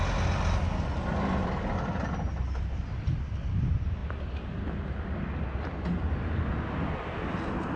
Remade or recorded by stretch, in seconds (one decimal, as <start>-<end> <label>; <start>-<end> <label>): 0.0-7.8 recorded